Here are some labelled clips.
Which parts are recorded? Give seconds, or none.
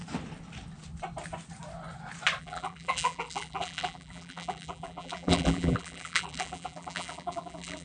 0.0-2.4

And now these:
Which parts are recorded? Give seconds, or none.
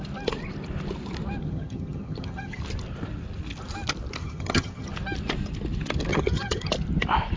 0.0-1.4; 2.6-4.2; 4.9-6.1; 6.7-7.4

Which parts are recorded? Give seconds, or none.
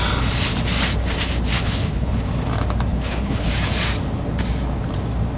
0.0-1.5; 2.1-2.9; 3.5-5.4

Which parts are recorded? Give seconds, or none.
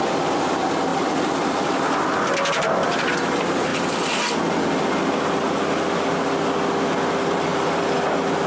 0.0-8.5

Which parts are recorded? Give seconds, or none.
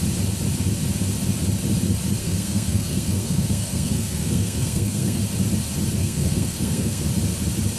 0.0-2.2; 5.2-6.0; 7.0-7.8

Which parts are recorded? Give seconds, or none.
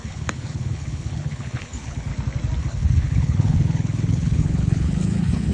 2.1-2.6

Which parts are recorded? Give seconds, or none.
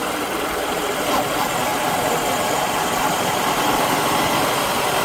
0.0-1.0